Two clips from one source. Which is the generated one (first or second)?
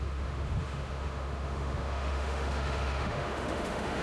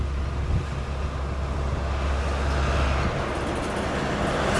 first